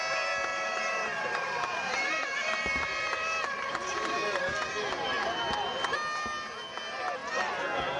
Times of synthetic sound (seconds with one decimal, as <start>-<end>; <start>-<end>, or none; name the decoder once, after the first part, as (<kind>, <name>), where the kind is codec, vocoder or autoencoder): 0.5-4.4 (vocoder, BigVGAN v2)